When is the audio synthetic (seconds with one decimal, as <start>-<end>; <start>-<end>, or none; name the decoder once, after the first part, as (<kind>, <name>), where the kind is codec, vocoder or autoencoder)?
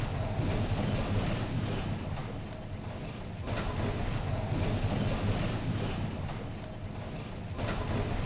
none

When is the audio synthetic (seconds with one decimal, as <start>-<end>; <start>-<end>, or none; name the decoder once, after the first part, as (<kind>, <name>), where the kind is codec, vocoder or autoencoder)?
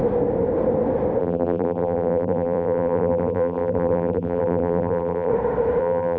1.2-5.3 (vocoder, BigVGAN v2); 5.8-6.2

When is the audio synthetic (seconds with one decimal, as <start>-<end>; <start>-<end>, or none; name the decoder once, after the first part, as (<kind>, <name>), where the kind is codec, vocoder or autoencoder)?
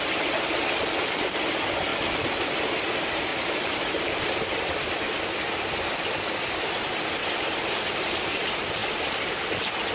3.3-4.2 (vocoder, BigVGAN v2); 7.2-8.4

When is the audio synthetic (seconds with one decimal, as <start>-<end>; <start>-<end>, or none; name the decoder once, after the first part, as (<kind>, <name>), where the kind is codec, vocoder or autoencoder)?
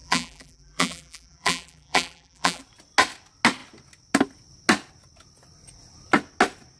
0.0-2.6 (vocoder, BigVGAN v2)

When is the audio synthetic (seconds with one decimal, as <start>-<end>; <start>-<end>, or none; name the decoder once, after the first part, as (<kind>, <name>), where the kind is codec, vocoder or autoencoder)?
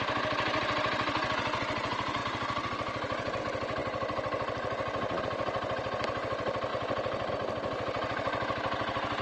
2.2-3.4 (vocoder, BigVGAN v2)